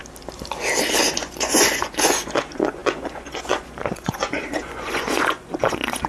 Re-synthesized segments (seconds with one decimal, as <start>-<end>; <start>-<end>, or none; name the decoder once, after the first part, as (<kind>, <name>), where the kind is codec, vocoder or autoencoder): 1.1-6.1 (vocoder, Vocos)